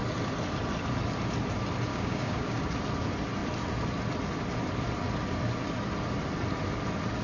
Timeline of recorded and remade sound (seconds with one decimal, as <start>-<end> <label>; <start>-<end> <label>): 0.0-1.9 recorded; 1.9-2.6 remade; 2.6-7.2 recorded